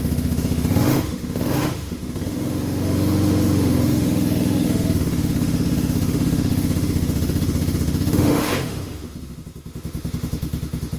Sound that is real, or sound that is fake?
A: fake